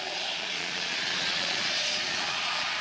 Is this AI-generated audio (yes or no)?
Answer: yes